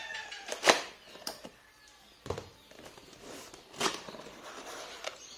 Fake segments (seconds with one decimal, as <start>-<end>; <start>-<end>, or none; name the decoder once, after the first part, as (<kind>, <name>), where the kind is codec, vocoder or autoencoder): 0.0-5.4 (vocoder, BigVGAN v2)